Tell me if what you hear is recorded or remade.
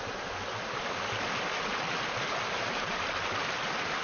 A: recorded